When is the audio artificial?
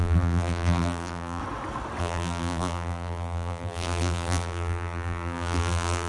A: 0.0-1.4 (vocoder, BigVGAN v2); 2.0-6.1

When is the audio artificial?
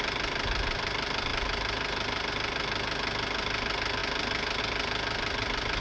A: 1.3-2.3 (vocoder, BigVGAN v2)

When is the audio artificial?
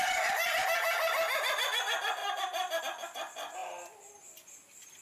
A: 2.2-2.8 (vocoder, BigVGAN v2)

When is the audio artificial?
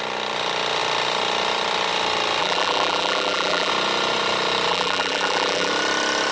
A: 2.4-3.7 (vocoder, BigVGAN v2); 4.7-5.7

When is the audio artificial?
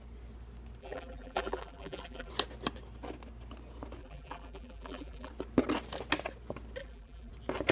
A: 0.8-2.3 (vocoder, BigVGAN v2); 4.0-5.3; 6.8-7.3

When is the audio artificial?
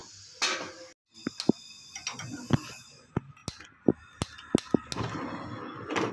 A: none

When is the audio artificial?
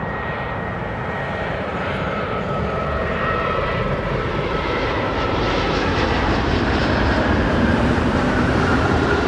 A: 0.0-6.8 (vocoder, BigVGAN v2); 7.5-9.3